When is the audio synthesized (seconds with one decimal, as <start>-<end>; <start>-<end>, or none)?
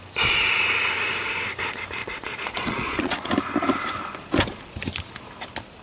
2.0-3.3